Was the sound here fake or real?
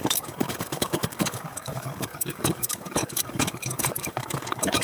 fake